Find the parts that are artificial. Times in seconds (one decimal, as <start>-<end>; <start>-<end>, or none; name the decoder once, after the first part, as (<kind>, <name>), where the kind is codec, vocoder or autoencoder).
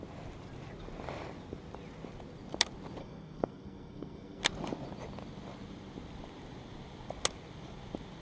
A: 3.0-4.4 (codec, SNAC)